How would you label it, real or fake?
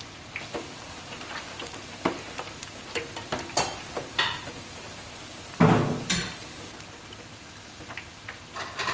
real